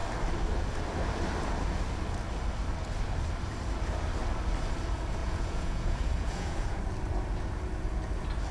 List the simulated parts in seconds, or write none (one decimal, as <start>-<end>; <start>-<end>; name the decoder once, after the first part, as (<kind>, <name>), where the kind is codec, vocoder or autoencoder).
5.2-6.8 (vocoder, Vocos)